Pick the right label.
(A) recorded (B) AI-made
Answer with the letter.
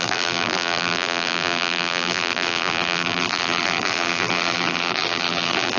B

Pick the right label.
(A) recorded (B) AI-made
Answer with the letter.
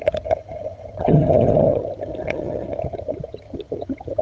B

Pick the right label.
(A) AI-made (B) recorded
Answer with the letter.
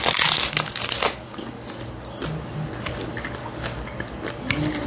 B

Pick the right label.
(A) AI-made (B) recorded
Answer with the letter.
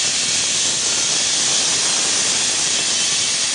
B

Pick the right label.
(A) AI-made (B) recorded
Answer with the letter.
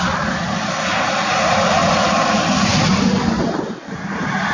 B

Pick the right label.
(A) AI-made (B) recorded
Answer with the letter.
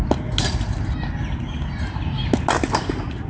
B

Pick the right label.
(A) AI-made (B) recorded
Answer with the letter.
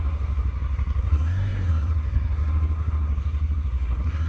A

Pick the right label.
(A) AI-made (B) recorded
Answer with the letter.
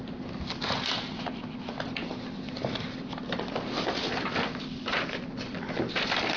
A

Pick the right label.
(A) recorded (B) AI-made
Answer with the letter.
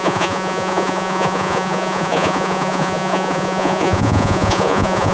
B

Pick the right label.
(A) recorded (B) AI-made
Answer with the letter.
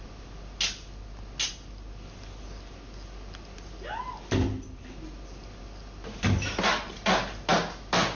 A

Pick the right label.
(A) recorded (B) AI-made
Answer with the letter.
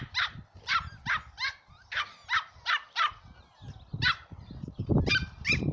A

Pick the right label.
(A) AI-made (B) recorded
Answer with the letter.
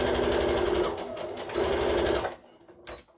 B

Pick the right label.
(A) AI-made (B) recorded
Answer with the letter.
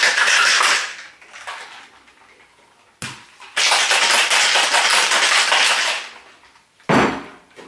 B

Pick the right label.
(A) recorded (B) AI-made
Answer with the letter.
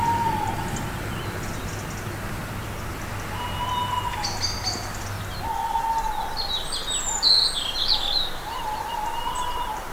A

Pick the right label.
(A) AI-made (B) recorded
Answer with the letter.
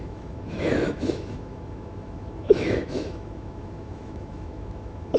A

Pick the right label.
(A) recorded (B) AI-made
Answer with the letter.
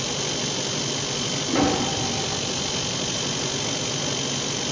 A